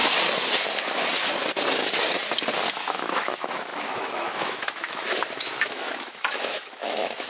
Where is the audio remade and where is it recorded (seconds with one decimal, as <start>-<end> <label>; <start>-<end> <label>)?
0.0-2.7 recorded; 2.7-7.3 remade